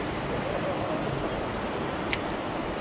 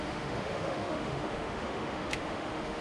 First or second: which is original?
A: first